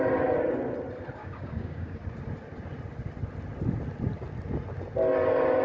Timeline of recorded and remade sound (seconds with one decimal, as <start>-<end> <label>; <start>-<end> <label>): 0.0-1.2 recorded; 1.2-2.0 remade; 2.0-5.6 recorded